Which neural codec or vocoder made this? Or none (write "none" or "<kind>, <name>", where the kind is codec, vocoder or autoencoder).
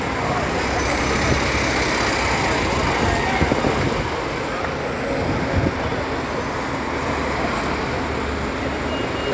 none